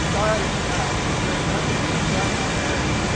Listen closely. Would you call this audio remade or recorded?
recorded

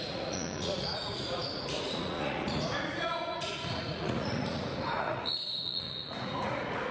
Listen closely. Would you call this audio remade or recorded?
remade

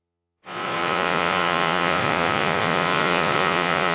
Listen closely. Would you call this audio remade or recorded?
remade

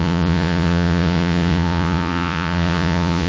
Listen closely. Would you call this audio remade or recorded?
remade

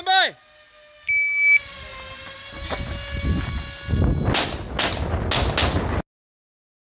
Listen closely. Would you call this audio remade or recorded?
recorded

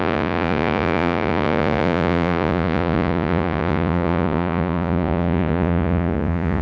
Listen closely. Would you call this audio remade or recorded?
remade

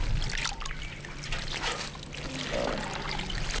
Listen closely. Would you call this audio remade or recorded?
recorded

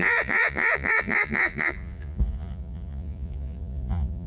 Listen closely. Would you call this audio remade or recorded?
remade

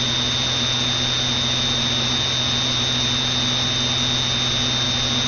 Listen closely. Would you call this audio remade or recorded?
recorded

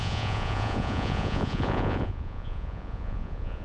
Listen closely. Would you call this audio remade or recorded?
remade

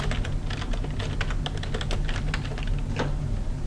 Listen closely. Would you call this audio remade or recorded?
recorded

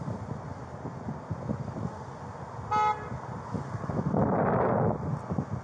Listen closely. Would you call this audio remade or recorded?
recorded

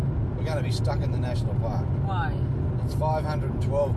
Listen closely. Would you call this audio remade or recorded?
recorded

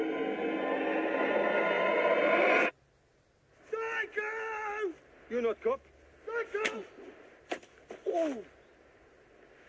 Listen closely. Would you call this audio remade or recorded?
recorded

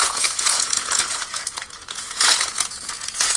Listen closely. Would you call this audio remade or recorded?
remade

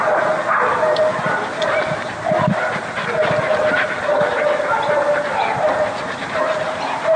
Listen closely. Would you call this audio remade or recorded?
recorded